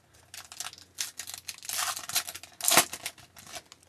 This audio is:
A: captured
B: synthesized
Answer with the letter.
A